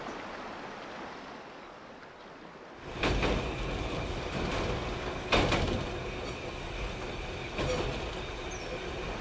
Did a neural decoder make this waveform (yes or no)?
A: no